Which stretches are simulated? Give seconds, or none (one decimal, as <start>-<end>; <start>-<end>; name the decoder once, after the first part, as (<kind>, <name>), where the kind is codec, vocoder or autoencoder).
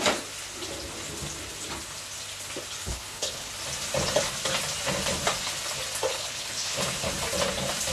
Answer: 2.8-3.5 (codec, HILCodec); 6.1-7.1